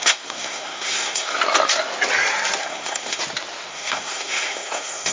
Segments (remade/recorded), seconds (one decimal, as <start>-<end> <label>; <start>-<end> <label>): 0.0-1.4 remade; 1.4-2.6 recorded; 2.6-3.2 remade; 3.2-3.7 recorded; 3.7-5.1 remade